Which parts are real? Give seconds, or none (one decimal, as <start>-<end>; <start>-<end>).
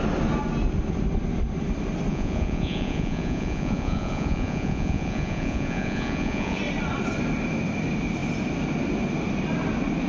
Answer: 0.0-2.1; 6.6-10.1